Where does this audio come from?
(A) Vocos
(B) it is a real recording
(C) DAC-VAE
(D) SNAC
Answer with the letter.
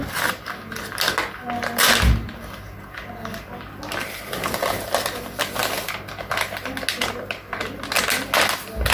B